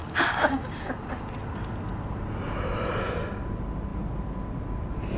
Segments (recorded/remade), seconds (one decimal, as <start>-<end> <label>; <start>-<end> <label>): 0.0-0.9 remade; 0.9-5.2 recorded